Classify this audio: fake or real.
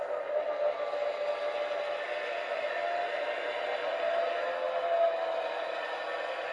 real